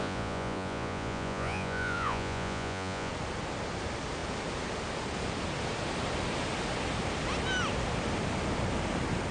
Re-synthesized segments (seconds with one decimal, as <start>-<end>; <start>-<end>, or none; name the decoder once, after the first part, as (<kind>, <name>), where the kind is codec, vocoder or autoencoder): 0.0-3.1 (vocoder, Vocos)